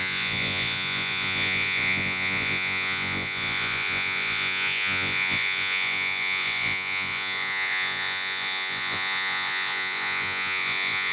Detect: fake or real fake